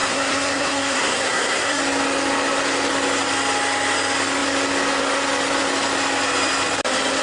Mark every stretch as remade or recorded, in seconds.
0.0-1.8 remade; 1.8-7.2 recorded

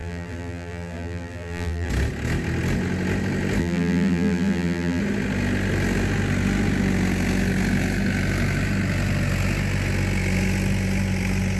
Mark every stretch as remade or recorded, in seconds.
0.0-1.9 remade; 1.9-3.6 recorded; 3.6-5.0 remade; 5.0-11.6 recorded